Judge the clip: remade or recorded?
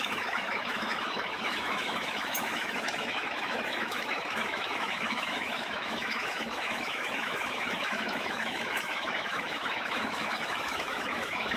remade